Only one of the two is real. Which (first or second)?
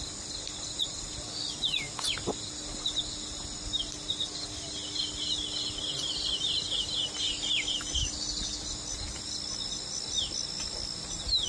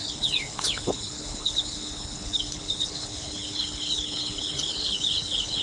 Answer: first